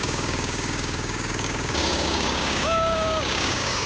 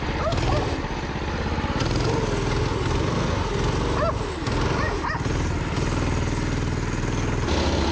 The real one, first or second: second